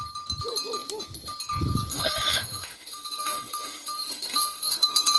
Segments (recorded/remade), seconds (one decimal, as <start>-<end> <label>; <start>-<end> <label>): 0.0-1.9 recorded; 1.9-5.2 remade